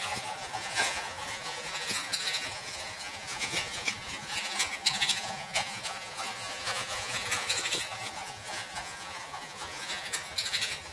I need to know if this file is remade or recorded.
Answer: remade